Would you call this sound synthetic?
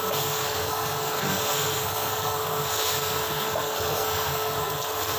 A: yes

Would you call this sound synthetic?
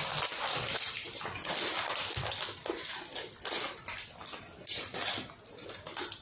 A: no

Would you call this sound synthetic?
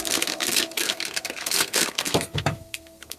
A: yes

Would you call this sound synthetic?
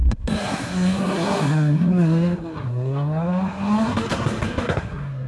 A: yes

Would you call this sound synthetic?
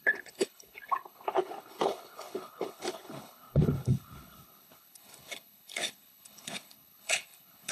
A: yes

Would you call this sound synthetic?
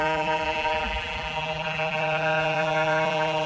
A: yes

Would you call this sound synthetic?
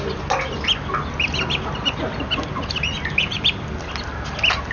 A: no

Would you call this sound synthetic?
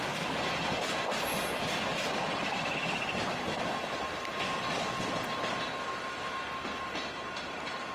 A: no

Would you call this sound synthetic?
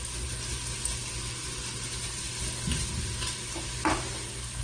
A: no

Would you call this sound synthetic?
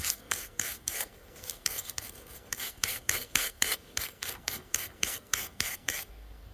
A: yes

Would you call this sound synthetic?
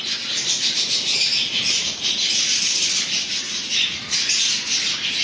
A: no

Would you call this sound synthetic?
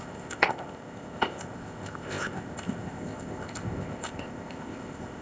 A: yes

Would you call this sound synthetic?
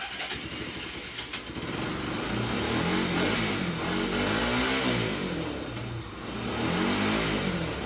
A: no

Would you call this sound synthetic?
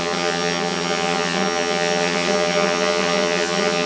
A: yes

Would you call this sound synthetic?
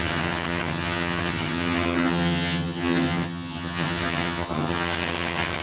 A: yes